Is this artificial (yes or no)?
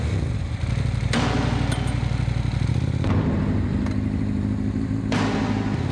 no